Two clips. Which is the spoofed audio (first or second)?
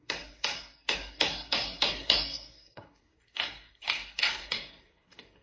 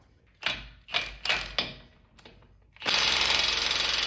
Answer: first